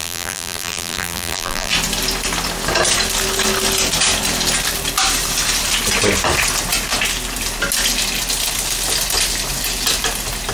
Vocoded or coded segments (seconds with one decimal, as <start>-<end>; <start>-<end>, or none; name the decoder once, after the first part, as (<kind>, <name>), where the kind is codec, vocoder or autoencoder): 0.0-1.7 (vocoder, BigVGAN v2)